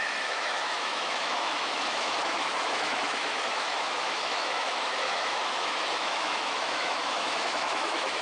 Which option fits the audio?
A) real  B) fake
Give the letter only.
B